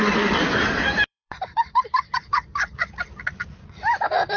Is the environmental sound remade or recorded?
remade